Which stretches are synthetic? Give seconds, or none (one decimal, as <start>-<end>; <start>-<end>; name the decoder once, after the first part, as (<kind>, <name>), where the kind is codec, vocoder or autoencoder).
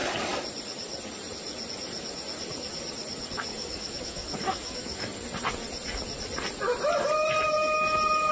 3.5-5.1 (autoencoder, DAC-VAE)